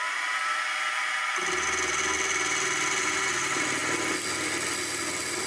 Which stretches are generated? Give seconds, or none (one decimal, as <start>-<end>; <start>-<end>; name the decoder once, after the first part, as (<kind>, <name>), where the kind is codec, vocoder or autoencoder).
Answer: none